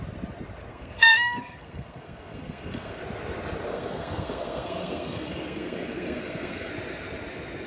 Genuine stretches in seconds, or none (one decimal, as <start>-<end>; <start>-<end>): 0.0-0.7; 3.0-3.7; 6.7-7.7